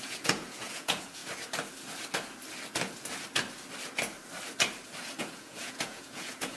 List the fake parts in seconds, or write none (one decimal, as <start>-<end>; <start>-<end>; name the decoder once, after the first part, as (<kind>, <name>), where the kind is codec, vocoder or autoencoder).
0.0-1.2 (vocoder, Vocos); 5.2-6.6